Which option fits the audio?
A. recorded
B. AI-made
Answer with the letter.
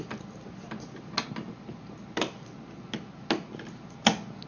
A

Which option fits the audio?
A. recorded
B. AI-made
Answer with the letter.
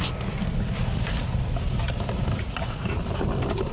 A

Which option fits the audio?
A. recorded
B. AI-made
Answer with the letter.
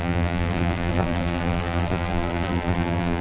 B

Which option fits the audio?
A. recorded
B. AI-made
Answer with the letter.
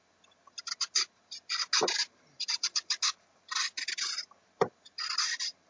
A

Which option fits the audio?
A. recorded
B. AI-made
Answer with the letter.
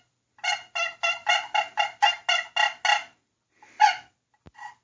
A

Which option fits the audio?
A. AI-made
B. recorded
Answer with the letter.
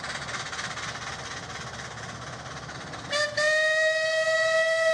B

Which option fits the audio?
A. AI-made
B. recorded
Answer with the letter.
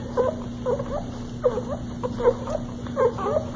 B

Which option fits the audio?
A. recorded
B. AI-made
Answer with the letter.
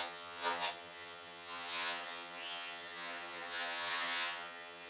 B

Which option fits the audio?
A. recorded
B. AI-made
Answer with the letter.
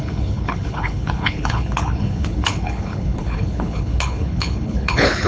B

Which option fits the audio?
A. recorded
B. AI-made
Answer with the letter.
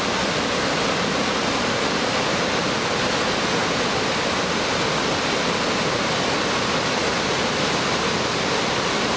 A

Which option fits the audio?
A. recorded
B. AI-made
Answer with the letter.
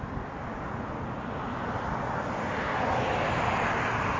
A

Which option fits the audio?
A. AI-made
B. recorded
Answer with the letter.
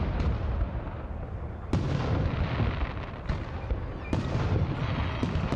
B